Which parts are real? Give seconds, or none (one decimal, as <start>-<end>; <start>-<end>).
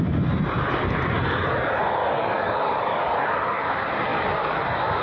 0.0-2.0; 3.6-5.0